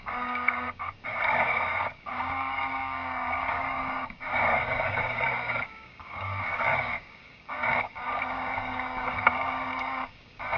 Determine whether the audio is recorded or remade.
remade